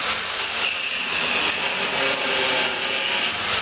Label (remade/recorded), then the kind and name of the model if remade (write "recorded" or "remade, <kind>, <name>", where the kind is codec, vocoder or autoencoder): recorded